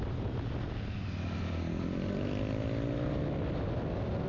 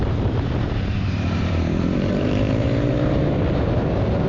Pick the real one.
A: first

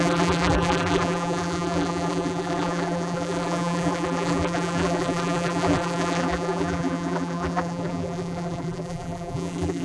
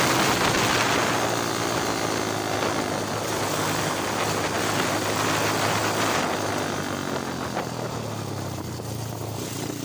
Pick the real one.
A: second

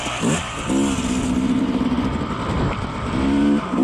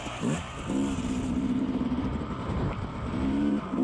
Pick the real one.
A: first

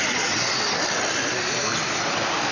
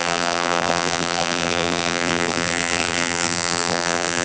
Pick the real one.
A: first